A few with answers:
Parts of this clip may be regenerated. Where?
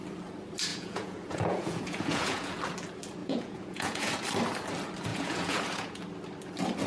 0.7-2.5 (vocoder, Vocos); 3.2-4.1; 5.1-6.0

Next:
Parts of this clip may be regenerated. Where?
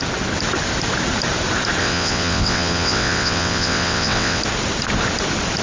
1.8-4.4 (vocoder, WaveNeXt)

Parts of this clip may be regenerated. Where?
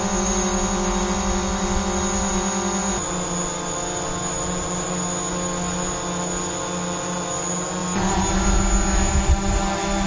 none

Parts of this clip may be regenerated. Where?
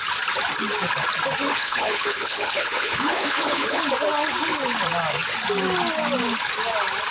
1.5-3.8 (codec, HILCodec)